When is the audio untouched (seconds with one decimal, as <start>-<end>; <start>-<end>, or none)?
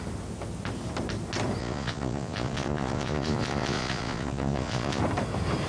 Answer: 0.0-1.6; 5.0-5.7